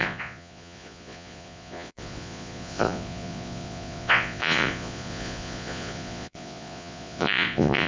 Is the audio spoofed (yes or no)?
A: yes